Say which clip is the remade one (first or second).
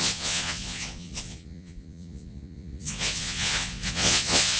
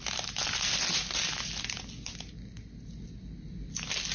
first